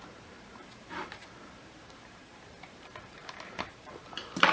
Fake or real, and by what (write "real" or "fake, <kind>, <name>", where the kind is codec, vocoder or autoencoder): fake, vocoder, BigVGAN v2